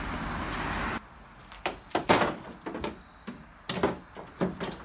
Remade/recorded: recorded